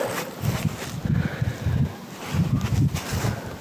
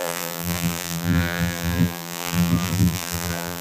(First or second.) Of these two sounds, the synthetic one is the second